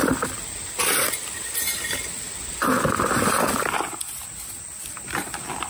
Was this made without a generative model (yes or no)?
yes